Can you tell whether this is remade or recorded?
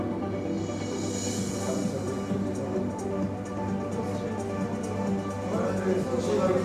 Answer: recorded